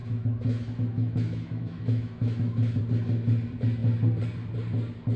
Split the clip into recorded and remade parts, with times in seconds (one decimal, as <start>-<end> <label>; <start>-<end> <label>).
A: 0.0-2.8 remade; 2.8-5.2 recorded